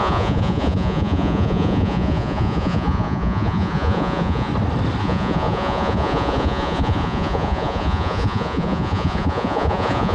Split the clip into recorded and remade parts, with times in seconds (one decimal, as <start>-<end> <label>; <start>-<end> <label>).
0.0-4.5 remade; 4.5-5.0 recorded; 5.0-10.1 remade